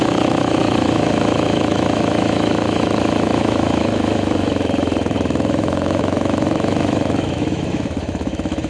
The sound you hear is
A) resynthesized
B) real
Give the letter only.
A